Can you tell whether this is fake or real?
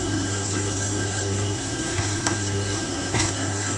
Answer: fake